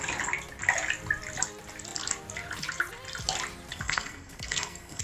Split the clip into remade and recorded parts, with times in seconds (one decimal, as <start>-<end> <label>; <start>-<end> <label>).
0.0-3.7 recorded; 3.7-5.0 remade